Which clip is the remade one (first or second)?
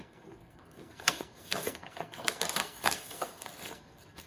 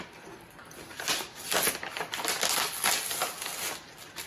first